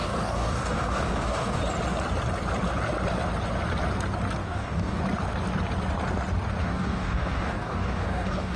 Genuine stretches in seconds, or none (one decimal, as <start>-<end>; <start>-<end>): 1.6-4.4; 5.0-6.6